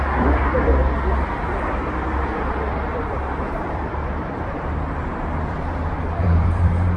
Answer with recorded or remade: remade